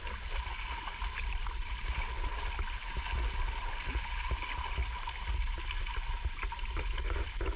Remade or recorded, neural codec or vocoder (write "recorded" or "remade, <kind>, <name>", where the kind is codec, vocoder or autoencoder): recorded